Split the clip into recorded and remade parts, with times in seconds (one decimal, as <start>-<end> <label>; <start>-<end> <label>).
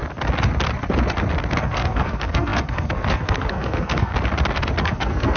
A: 0.0-1.6 recorded; 1.6-4.1 remade; 4.1-4.8 recorded; 4.8-5.4 remade